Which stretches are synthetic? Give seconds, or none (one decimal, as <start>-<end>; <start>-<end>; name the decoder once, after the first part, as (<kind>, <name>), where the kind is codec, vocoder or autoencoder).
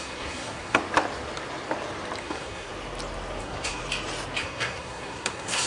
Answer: 0.0-0.8 (codec, SNAC); 2.2-2.7; 3.4-3.8; 4.4-5.7